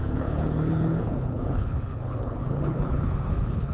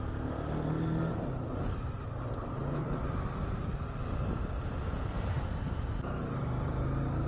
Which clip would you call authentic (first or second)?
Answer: second